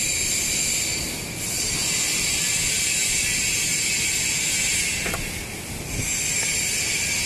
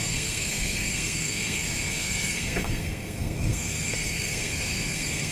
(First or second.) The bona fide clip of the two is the first